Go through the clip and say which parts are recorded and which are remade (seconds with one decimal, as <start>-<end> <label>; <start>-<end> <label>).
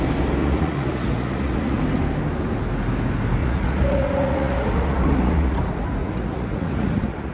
0.0-0.4 recorded; 0.4-1.8 remade; 1.8-3.4 recorded; 3.4-5.6 remade; 5.6-6.0 recorded; 6.0-7.3 remade